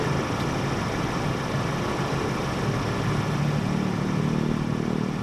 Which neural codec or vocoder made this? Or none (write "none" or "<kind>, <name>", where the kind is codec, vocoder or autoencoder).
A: none